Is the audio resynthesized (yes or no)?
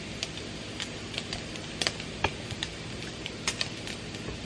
no